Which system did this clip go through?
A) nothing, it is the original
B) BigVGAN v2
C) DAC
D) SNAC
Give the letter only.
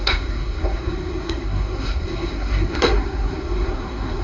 D